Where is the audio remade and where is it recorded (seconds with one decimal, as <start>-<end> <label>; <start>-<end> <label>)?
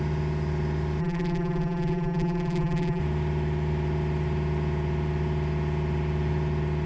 0.0-1.0 recorded; 1.0-3.0 remade; 3.0-6.9 recorded